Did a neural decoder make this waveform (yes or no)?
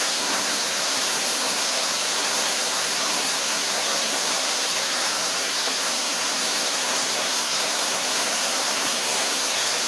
yes